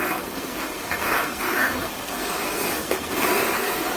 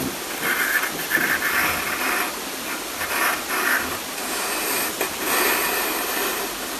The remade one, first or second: first